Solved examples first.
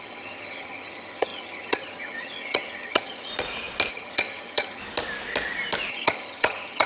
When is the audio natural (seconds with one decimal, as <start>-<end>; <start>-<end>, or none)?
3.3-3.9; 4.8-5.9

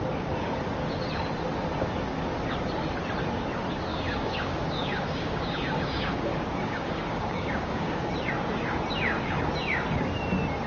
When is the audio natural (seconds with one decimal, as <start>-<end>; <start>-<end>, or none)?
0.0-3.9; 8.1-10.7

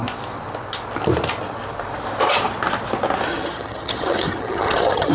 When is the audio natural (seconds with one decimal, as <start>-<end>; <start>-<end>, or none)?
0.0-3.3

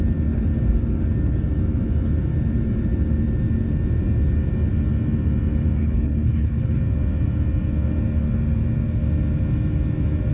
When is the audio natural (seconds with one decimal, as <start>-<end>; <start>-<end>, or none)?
0.0-5.8; 6.8-10.3

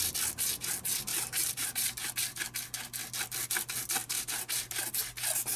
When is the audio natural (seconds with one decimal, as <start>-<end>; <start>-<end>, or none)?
0.0-1.1; 2.4-4.0; 4.8-5.6

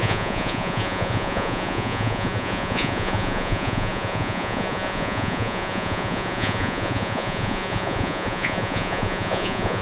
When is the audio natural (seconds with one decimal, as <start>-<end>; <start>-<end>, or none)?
none

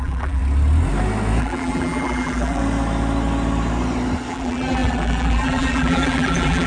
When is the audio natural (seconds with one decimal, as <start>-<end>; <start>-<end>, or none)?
0.4-1.4; 2.6-4.3